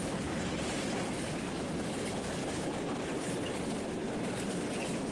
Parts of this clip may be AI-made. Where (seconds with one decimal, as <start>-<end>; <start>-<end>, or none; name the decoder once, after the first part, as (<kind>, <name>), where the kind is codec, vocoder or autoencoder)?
none